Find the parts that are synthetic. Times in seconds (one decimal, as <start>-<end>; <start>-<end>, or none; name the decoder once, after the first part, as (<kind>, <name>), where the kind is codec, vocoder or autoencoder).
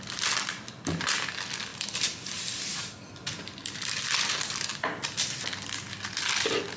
none